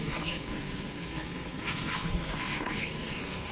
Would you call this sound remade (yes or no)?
yes